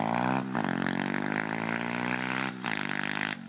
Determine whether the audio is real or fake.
real